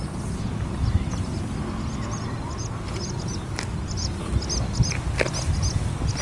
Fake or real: real